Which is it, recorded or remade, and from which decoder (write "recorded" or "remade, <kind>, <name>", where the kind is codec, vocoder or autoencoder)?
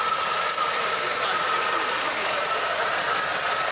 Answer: recorded